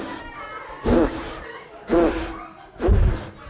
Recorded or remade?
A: recorded